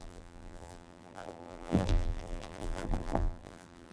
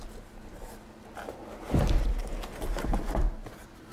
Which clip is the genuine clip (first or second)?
second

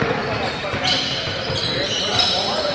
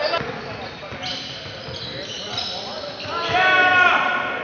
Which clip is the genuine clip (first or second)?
second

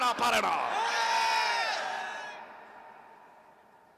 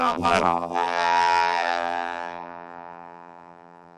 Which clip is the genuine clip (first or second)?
first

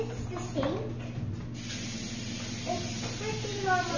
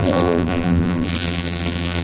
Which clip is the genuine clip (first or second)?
first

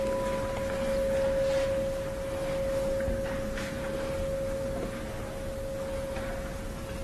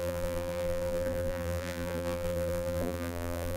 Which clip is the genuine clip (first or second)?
first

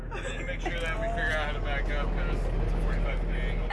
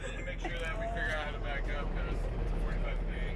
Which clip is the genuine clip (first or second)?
first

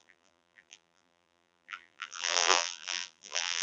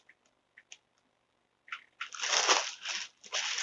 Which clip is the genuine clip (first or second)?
second